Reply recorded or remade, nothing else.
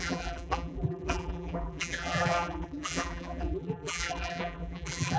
remade